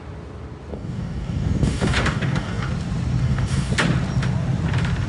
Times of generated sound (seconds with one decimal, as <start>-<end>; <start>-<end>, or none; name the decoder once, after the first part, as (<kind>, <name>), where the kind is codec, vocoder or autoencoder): 0.7-2.7 (codec, DAC); 3.2-3.7